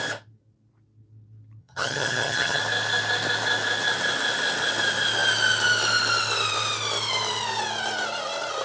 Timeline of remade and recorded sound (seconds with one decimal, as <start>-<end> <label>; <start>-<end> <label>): 0.0-1.6 recorded; 1.6-2.6 remade; 2.6-8.6 recorded